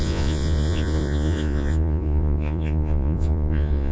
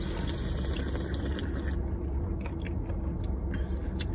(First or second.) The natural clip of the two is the second